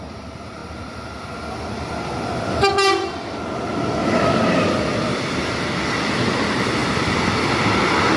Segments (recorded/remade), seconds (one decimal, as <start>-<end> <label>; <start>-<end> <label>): 0.0-8.2 recorded